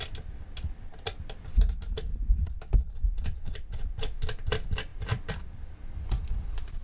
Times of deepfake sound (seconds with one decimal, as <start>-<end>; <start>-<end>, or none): none